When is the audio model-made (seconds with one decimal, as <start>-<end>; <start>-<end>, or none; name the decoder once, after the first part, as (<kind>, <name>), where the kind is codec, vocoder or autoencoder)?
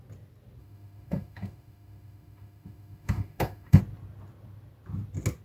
0.6-3.8 (autoencoder, DAC-VAE)